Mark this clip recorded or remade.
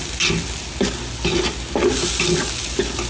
recorded